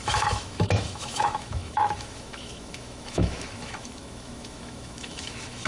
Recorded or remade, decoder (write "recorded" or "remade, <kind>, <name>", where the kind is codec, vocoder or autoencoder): remade, autoencoder, DAC-VAE